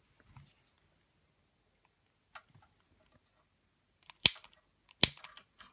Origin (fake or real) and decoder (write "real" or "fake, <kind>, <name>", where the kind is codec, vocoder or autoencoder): real